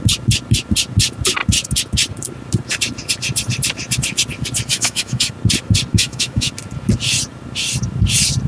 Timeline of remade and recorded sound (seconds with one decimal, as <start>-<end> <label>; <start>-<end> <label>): 0.0-4.7 recorded; 4.7-5.3 remade; 5.3-5.9 recorded; 5.9-6.5 remade; 6.5-8.5 recorded